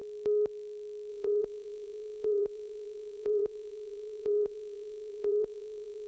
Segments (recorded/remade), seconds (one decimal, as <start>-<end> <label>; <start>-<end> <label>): 0.0-1.1 recorded; 1.1-6.1 remade

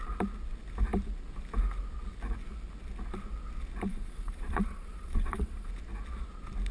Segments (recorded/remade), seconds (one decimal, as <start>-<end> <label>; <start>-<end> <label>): 0.0-3.9 recorded; 3.9-5.7 remade; 5.7-6.7 recorded

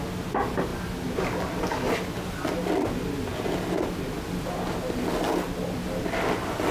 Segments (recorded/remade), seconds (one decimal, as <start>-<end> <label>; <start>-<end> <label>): 0.0-6.7 recorded

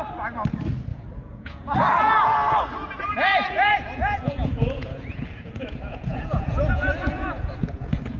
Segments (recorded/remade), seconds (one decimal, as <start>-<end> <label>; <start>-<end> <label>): 0.0-0.9 recorded; 0.9-2.1 remade; 2.1-3.1 recorded; 3.1-8.2 remade

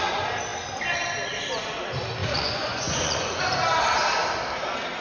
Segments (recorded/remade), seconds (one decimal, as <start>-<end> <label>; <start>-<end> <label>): 0.0-2.2 recorded; 2.2-3.4 remade; 3.4-5.0 recorded